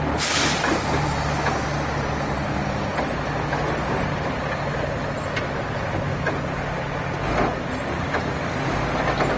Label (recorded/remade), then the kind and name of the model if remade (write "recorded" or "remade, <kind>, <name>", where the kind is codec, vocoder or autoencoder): recorded